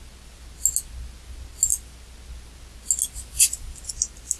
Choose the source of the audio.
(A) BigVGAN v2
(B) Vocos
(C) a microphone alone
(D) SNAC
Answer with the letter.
C